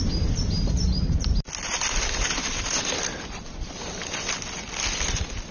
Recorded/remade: recorded